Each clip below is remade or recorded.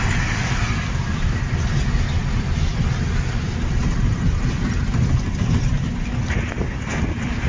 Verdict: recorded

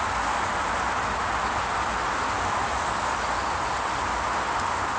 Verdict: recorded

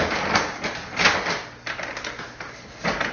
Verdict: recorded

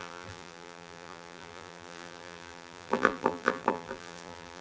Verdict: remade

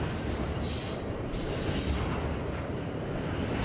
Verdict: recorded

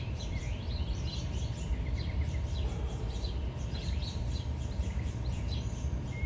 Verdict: remade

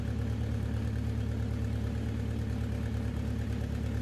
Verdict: recorded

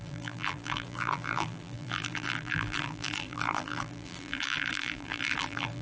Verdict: remade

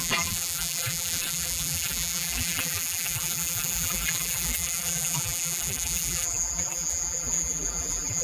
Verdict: remade